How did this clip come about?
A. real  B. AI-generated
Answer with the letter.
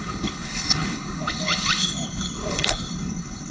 B